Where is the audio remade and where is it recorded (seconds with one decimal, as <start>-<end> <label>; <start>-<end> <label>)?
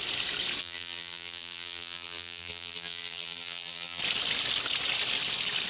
0.0-0.6 recorded; 0.6-4.0 remade; 4.0-5.7 recorded